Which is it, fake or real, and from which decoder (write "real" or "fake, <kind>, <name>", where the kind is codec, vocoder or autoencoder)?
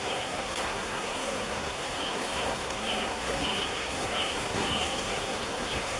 fake, codec, SNAC